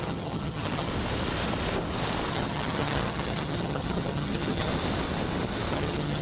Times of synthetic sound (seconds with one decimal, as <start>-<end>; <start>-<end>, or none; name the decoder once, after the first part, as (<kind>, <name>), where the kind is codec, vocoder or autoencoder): 0.0-0.9 (vocoder, HiFi-GAN); 2.3-4.7; 5.7-6.2